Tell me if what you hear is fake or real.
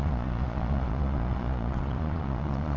fake